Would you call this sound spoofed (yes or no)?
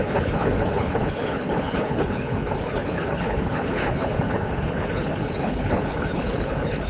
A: yes